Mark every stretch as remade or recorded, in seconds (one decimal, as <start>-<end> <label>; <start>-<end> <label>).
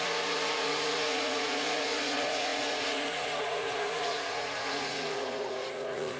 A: 0.0-6.2 remade